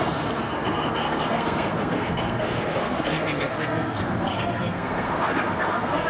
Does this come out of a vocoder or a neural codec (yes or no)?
yes